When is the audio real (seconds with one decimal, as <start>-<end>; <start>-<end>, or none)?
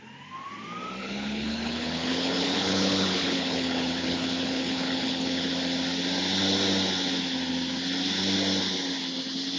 0.0-1.0; 5.5-9.6